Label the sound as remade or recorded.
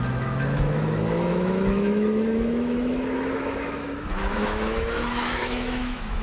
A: remade